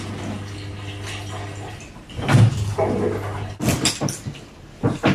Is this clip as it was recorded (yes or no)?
yes